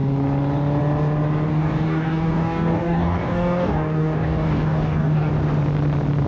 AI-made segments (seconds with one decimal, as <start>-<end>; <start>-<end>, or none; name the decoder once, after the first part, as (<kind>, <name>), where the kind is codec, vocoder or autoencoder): 1.5-5.3 (codec, DAC)